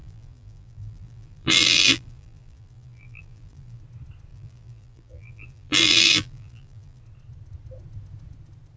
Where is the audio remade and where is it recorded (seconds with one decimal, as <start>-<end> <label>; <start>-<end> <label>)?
0.0-3.8 remade; 3.8-4.3 recorded; 4.3-7.0 remade; 7.0-8.8 recorded